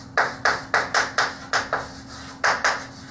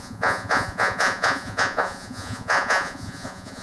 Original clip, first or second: first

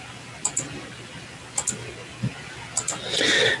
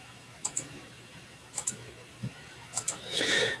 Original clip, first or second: first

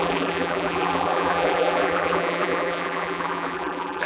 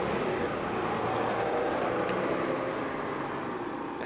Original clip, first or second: second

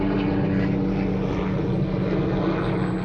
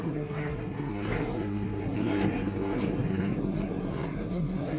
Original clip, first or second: first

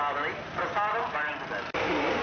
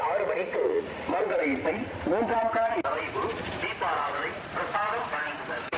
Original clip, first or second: first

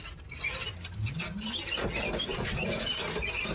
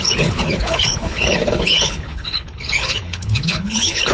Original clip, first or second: first